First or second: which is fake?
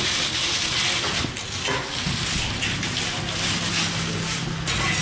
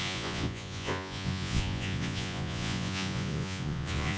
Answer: second